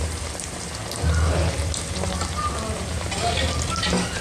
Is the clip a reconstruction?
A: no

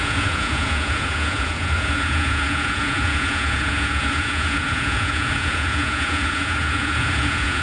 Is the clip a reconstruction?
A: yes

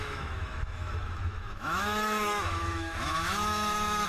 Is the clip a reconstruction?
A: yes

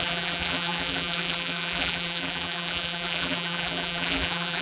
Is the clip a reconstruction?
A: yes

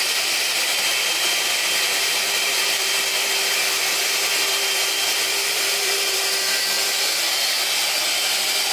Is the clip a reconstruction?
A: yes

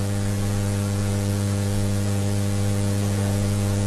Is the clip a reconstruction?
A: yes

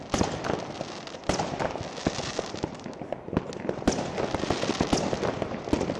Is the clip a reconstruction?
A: no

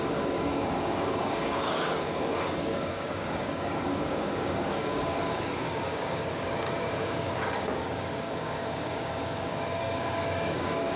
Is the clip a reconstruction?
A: yes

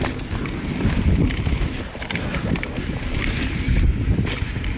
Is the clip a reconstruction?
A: yes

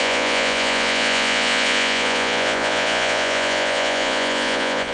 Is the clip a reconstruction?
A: yes